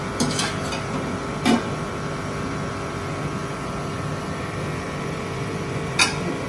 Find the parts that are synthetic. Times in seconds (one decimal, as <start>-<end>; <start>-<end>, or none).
none